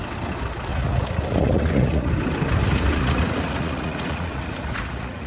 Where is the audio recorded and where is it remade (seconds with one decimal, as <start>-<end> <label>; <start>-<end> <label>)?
0.0-0.7 recorded; 0.7-2.1 remade; 2.1-2.6 recorded; 2.6-5.3 remade